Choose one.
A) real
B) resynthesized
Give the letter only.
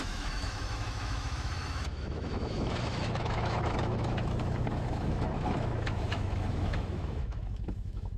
B